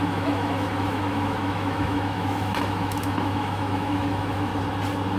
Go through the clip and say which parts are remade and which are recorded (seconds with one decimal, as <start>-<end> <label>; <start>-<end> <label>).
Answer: 0.0-4.5 remade; 4.5-5.2 recorded